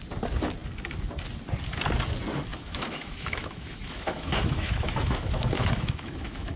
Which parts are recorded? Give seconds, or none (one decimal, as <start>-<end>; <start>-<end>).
0.0-2.5

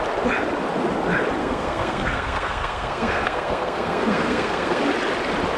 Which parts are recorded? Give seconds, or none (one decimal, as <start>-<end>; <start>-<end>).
0.0-1.4; 4.8-5.6

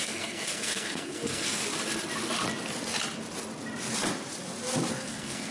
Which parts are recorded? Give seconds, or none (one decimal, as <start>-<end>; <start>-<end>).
1.6-4.9

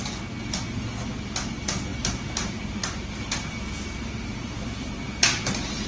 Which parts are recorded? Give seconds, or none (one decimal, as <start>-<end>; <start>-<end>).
0.0-5.9

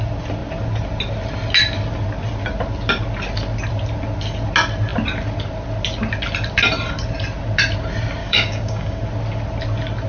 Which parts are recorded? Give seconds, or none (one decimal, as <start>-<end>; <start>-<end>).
0.0-8.2; 9.0-10.1

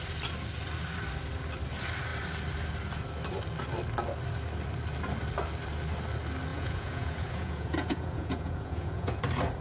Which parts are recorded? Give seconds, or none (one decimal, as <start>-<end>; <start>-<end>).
0.0-6.5; 9.2-9.6

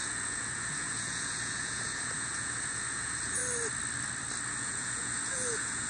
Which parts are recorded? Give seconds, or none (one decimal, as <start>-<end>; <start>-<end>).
3.4-4.5